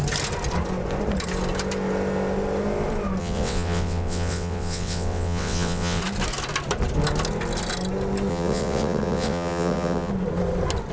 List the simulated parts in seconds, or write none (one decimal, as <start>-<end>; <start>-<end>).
3.2-6.0; 8.3-10.1